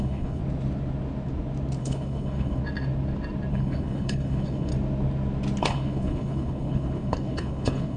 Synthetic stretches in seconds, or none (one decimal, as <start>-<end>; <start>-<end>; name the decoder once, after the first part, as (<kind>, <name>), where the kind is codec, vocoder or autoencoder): 0.0-0.4 (codec, HILCodec); 1.8-2.6; 3.5-4.7; 5.6-8.0